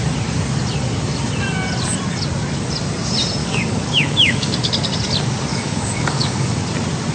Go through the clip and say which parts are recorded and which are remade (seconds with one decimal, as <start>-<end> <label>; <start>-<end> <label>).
0.0-3.4 recorded; 3.4-4.7 remade; 4.7-5.5 recorded; 5.5-6.6 remade; 6.6-7.1 recorded